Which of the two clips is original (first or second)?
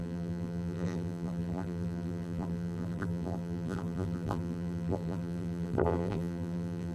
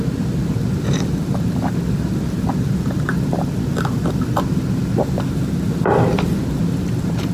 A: second